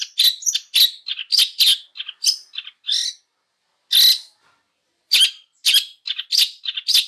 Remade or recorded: recorded